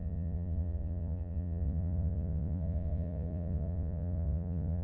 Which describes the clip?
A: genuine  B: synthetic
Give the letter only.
B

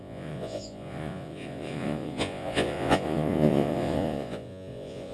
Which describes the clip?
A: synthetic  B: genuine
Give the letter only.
A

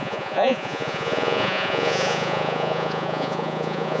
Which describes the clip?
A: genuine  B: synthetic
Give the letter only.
B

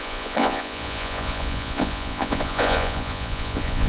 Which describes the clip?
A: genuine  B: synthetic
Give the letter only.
B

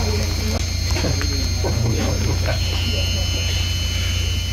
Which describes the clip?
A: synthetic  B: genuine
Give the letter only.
B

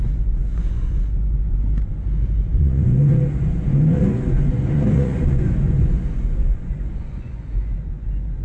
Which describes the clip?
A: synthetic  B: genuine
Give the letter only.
A